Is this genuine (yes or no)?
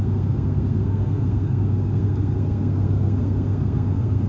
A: no